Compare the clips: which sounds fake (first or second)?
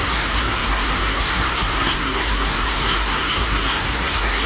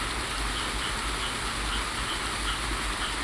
first